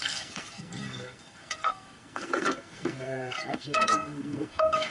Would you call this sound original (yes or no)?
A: no